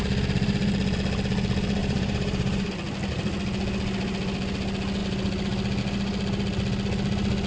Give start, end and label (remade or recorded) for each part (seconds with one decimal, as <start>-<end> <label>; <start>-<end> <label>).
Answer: 0.0-1.8 recorded; 1.8-2.7 remade; 2.7-7.5 recorded